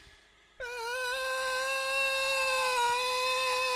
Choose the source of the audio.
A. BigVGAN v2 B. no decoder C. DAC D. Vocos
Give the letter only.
B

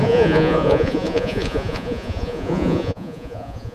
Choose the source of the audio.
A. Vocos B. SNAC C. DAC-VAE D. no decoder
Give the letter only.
A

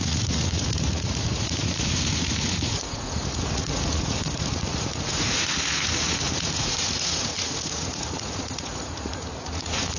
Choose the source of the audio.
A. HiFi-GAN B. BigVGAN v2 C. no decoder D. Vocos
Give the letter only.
D